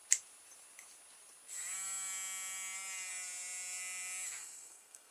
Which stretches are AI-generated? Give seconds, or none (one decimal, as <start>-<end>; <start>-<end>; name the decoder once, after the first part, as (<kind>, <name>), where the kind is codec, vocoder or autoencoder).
4.4-5.1 (codec, SNAC)